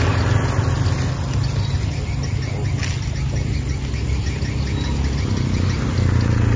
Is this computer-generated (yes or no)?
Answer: no